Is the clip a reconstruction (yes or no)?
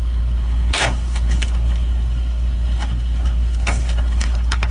yes